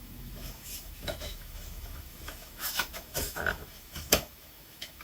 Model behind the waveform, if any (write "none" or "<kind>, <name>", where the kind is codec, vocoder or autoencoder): autoencoder, DAC-VAE